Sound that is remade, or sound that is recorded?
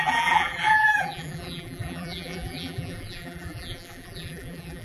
remade